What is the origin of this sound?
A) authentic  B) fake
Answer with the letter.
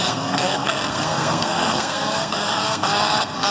B